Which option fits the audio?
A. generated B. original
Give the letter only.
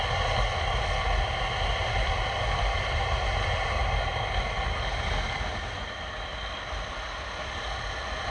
B